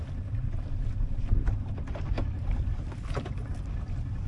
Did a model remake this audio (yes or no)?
no